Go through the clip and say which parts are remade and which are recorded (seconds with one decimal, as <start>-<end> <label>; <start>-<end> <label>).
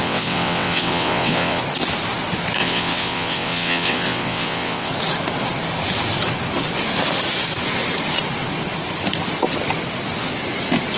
0.0-1.6 remade; 1.6-2.6 recorded; 2.6-4.9 remade; 4.9-11.0 recorded